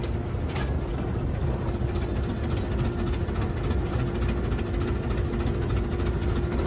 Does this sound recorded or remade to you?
recorded